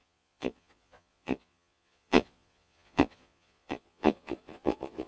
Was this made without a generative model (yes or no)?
no